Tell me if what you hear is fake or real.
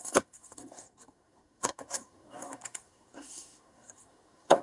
fake